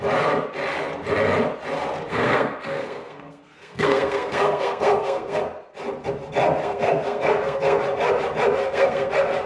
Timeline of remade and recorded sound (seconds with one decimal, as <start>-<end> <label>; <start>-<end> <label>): 0.0-2.1 recorded; 2.1-5.4 remade; 5.4-6.6 recorded; 6.6-7.8 remade; 7.8-8.6 recorded; 8.6-9.1 remade; 9.1-9.5 recorded